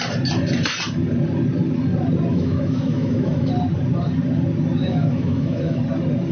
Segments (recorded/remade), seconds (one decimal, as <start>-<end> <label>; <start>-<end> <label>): 0.0-2.3 recorded; 2.3-3.5 remade; 3.5-4.8 recorded; 4.8-5.8 remade; 5.8-6.3 recorded